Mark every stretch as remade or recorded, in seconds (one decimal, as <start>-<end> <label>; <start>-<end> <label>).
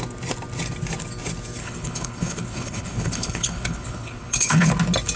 0.0-1.6 recorded; 1.6-4.7 remade; 4.7-5.2 recorded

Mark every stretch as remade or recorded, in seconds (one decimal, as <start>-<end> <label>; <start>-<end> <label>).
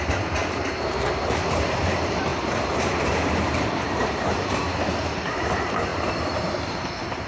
0.0-7.3 remade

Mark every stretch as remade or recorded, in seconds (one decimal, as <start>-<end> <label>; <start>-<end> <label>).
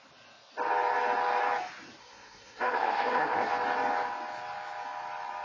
0.0-2.0 recorded; 2.0-3.5 remade; 3.5-5.4 recorded